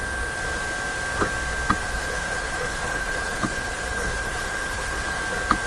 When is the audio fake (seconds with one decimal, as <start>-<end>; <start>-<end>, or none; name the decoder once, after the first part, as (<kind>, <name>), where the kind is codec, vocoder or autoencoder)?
1.8-5.2 (codec, HILCodec)